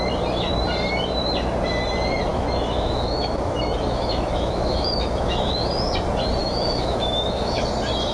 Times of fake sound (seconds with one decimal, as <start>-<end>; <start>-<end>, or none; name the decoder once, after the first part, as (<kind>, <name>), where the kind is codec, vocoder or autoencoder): 2.3-5.6 (autoencoder, DAC-VAE); 6.4-7.6

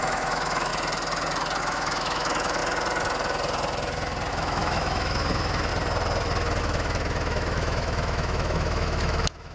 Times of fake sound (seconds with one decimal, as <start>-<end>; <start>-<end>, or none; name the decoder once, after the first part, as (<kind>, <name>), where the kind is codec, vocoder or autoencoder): 0.0-0.7 (autoencoder, DAC-VAE); 1.6-2.6; 4.3-5.7; 6.6-9.5

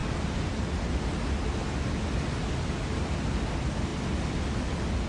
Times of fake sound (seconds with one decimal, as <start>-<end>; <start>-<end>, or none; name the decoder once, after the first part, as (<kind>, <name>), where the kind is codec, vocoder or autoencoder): none

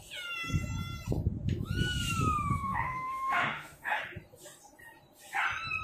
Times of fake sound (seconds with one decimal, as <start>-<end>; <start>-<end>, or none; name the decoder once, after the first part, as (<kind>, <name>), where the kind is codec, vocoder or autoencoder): 2.5-4.0 (autoencoder, DAC-VAE)

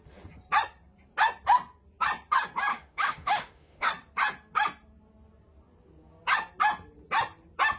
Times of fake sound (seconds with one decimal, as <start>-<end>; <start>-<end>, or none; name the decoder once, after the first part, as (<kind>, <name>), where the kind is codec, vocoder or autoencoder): 2.7-3.9 (autoencoder, DAC-VAE)

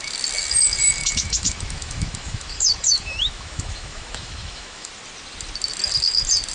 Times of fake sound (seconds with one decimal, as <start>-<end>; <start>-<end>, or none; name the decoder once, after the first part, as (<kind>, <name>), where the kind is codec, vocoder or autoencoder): 1.0-4.9 (autoencoder, DAC-VAE)

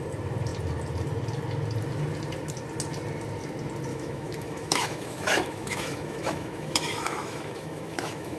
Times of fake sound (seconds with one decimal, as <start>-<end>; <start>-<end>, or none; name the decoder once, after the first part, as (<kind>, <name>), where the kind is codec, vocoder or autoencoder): 3.9-8.4 (autoencoder, DAC-VAE)

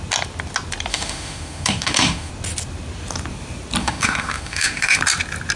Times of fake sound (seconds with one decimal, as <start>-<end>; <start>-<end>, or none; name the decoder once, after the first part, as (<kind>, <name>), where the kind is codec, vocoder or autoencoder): 0.9-2.3 (autoencoder, DAC-VAE); 3.8-5.0